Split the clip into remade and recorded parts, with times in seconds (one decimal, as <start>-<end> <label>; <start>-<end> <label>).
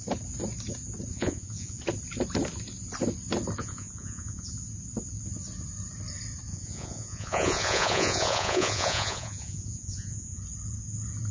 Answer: 0.0-1.1 recorded; 1.1-1.8 remade; 1.8-3.6 recorded; 3.6-4.5 remade; 4.5-6.5 recorded; 6.5-10.4 remade; 10.4-11.3 recorded